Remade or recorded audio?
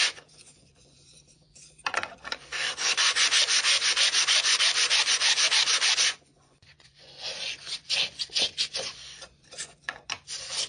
remade